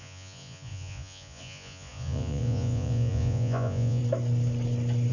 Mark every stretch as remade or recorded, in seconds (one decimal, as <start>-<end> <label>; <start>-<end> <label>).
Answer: 0.0-4.0 remade; 4.0-5.1 recorded